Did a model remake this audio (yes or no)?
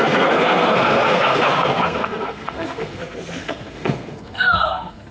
yes